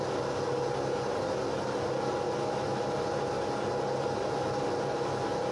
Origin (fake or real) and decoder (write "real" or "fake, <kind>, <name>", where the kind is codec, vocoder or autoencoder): real